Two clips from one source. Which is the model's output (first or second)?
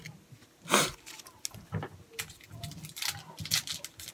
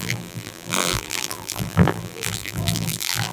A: second